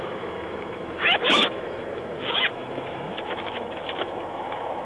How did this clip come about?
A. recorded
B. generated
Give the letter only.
B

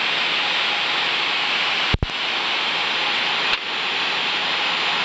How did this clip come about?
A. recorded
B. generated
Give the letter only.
A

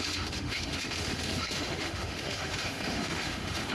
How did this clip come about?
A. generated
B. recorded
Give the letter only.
A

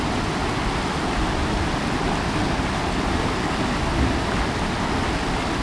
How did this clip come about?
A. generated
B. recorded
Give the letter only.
B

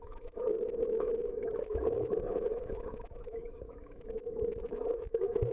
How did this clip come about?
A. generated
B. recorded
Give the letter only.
A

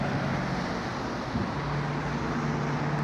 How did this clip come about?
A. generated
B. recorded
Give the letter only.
B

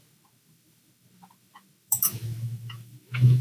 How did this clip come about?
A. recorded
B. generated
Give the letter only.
B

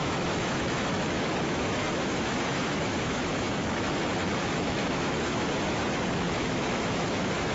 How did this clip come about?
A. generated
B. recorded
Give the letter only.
A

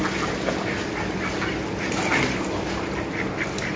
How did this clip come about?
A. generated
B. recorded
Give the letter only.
B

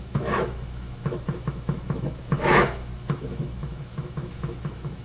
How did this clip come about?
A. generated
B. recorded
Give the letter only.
A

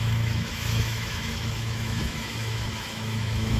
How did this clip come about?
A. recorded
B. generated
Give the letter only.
B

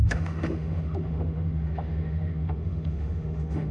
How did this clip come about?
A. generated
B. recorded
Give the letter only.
A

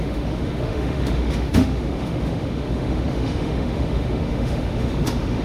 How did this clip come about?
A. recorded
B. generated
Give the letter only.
B